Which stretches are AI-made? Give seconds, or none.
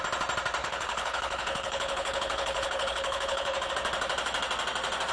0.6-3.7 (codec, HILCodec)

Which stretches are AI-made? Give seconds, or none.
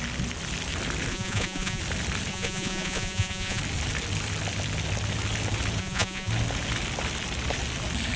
1.1-1.8 (vocoder, Vocos); 2.3-3.6; 5.8-6.3